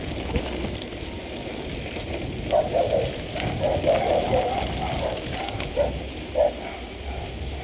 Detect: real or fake real